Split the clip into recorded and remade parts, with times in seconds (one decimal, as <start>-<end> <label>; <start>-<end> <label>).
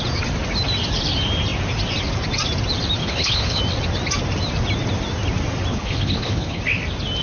0.0-3.0 recorded; 3.0-3.6 remade; 3.6-5.7 recorded; 5.7-6.6 remade; 6.6-7.2 recorded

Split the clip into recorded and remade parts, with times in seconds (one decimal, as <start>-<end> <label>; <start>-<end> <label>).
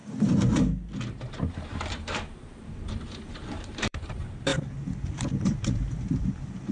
0.0-4.5 remade; 4.5-5.5 recorded; 5.5-6.7 remade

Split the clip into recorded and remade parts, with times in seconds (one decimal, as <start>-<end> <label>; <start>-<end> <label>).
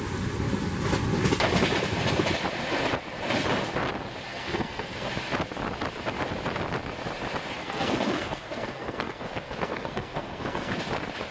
0.0-4.3 recorded; 4.3-5.1 remade; 5.1-7.6 recorded; 7.6-10.7 remade; 10.7-11.3 recorded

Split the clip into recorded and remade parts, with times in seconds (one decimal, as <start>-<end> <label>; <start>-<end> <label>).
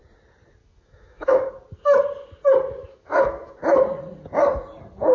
0.0-0.6 recorded; 0.6-1.5 remade; 1.5-2.8 recorded; 2.8-3.6 remade; 3.6-5.1 recorded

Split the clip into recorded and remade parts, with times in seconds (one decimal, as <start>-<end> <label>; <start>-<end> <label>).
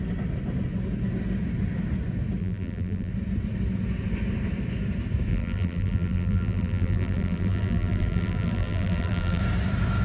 0.0-2.4 recorded; 2.4-3.1 remade; 3.1-5.3 recorded; 5.3-9.4 remade; 9.4-10.0 recorded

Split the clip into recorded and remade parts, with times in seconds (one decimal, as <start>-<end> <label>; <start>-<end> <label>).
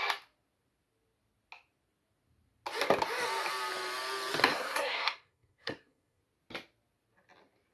0.0-4.5 recorded; 4.5-6.2 remade; 6.2-7.7 recorded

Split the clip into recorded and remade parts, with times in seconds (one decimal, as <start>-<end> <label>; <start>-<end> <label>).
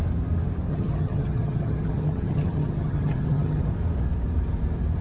0.0-0.7 recorded; 0.7-3.7 remade; 3.7-5.0 recorded